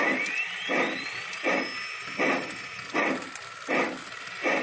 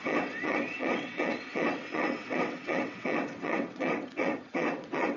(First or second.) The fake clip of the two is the second